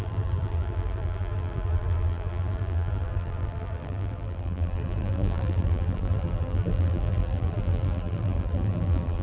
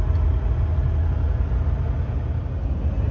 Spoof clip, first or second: first